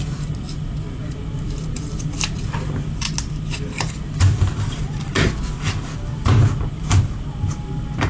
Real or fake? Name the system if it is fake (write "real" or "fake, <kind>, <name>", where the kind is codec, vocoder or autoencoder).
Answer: real